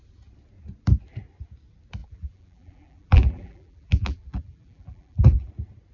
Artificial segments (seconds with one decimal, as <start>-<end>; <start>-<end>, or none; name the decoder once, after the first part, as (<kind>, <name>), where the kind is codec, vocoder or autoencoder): 2.0-5.5 (vocoder, BigVGAN v2)